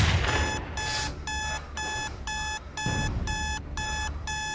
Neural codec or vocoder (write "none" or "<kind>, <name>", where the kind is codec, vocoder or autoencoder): none